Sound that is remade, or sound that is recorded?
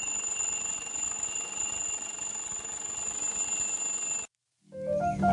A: recorded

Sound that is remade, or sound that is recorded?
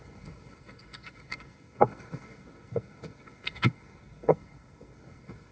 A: remade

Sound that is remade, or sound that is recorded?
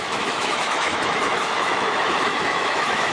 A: remade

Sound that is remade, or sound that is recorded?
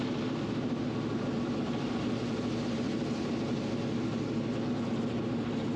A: recorded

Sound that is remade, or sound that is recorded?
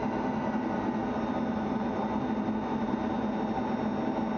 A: recorded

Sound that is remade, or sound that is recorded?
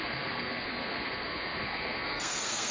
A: remade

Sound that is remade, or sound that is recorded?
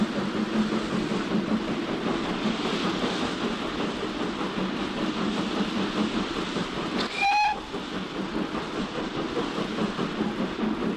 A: recorded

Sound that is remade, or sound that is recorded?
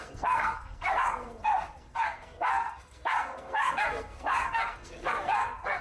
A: remade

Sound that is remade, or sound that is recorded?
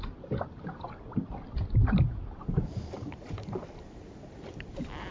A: remade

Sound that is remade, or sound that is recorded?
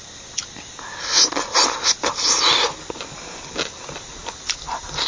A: recorded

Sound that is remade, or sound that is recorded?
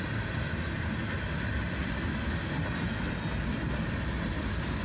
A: recorded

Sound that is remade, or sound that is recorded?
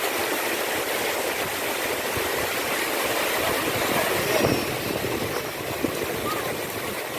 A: recorded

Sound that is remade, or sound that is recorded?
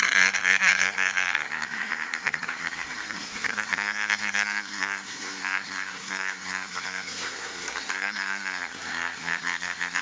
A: remade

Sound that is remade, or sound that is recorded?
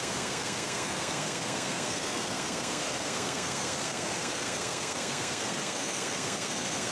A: remade